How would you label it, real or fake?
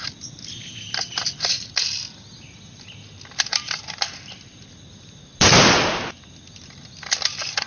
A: real